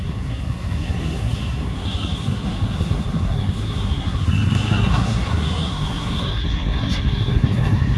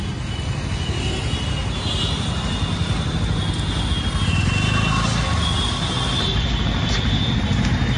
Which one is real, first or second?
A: second